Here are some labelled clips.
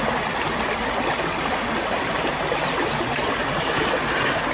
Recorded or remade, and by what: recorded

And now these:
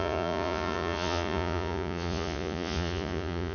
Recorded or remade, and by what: remade, vocoder, Vocos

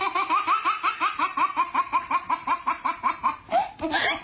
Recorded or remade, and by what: recorded